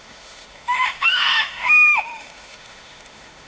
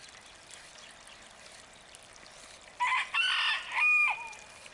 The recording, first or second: second